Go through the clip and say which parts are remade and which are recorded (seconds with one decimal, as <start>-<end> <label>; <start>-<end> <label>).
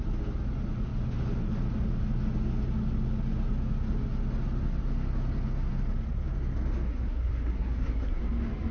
0.0-6.9 recorded; 6.9-8.2 remade; 8.2-8.7 recorded